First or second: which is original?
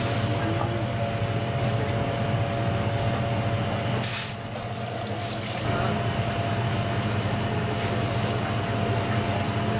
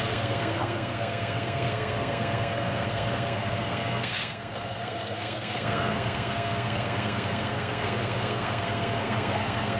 first